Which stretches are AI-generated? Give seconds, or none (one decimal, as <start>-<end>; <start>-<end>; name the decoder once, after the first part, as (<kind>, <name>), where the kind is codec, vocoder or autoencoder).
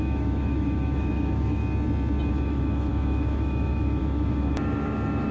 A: 0.0-1.6 (autoencoder, DAC-VAE); 2.3-5.3